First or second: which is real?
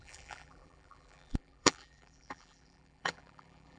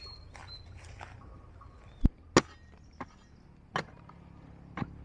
second